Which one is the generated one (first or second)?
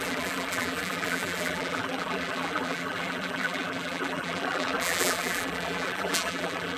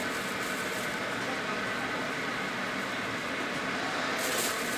first